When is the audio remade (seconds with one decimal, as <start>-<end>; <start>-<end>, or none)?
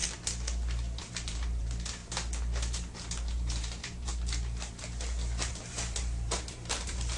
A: 1.0-2.0; 3.1-4.1; 5.5-7.2